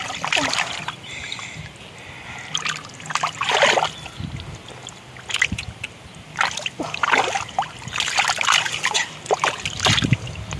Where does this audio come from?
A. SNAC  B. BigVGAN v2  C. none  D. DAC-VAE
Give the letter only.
C